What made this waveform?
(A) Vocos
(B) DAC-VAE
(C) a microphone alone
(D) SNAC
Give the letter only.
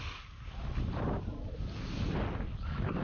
C